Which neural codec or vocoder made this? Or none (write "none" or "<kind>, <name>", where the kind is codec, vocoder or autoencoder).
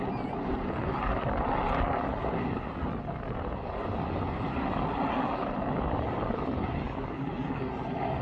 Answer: none